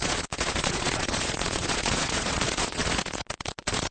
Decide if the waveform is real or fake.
fake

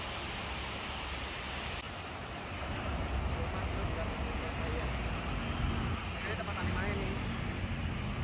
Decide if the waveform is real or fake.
real